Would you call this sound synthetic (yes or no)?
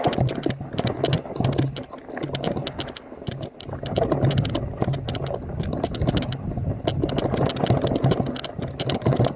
no